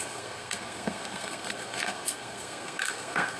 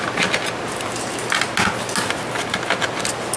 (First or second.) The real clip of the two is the second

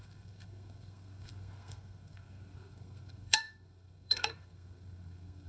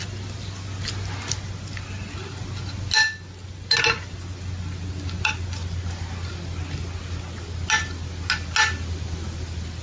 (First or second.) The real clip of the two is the second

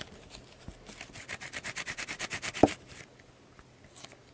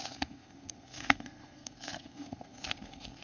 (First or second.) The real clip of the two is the first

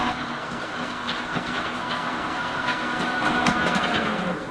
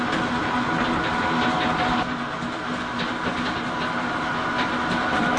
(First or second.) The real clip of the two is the second